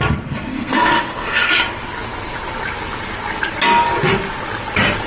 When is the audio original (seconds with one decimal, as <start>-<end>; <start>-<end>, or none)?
0.0-0.5; 1.5-5.1